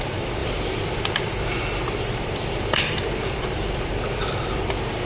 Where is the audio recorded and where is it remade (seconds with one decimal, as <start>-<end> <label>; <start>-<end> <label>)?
0.0-5.1 remade